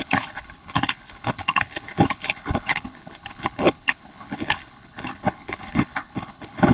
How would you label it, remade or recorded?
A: remade